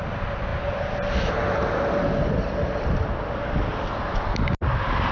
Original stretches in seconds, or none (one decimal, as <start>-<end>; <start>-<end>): 0.0-5.1

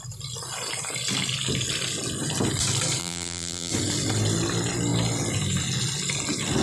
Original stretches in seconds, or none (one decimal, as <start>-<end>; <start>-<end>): 0.0-3.0; 3.7-6.6

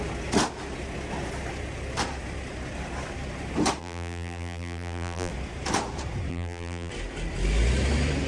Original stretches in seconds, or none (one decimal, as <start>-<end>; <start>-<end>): 0.0-3.8; 5.3-6.3; 6.9-8.3

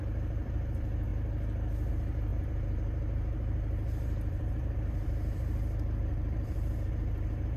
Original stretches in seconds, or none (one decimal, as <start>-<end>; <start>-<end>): 1.1-1.9

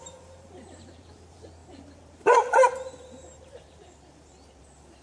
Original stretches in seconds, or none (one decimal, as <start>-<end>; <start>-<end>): none